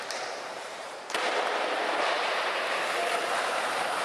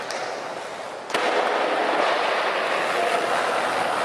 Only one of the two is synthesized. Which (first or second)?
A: first